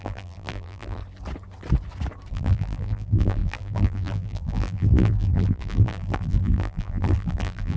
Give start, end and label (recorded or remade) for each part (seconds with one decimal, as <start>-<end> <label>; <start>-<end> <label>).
0.0-1.0 remade; 1.0-2.3 recorded; 2.3-7.8 remade